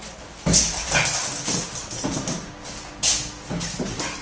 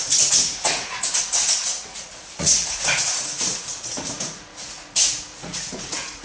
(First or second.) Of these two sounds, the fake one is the second